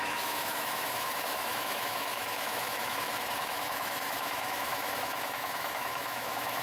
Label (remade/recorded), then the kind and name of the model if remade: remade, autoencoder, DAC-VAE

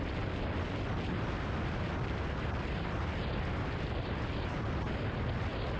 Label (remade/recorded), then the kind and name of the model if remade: recorded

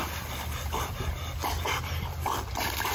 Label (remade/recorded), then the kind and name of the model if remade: recorded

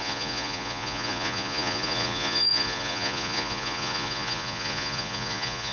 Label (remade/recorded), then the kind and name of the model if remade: remade, vocoder, Vocos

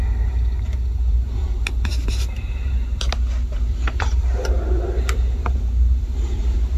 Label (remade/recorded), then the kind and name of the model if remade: remade, vocoder, BigVGAN v2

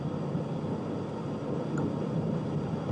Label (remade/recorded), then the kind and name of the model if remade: recorded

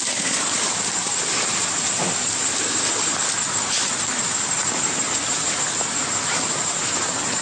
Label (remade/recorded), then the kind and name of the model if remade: recorded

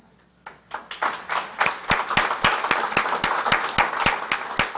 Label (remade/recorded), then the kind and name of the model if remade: recorded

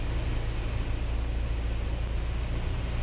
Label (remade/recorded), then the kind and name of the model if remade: recorded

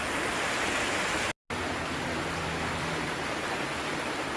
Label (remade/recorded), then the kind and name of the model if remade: recorded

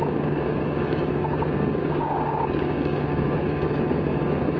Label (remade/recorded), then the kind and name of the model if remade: remade, codec, DAC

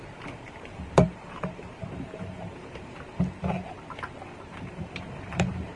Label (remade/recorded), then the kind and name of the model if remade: remade, vocoder, BigVGAN v2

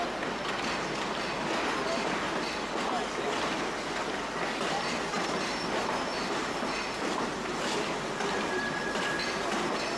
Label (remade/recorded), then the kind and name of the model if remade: recorded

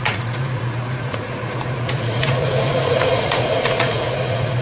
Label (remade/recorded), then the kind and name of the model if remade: remade, vocoder, Vocos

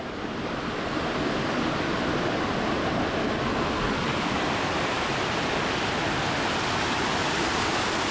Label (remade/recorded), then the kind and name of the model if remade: recorded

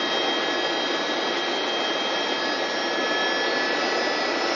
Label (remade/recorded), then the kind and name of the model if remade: recorded